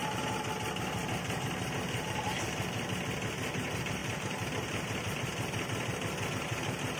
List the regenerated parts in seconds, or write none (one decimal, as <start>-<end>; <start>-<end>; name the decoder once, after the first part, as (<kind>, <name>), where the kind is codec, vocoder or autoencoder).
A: 4.0-6.3 (vocoder, BigVGAN v2)